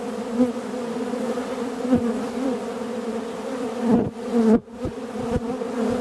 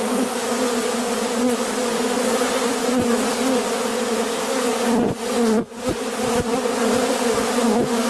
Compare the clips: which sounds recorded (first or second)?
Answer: second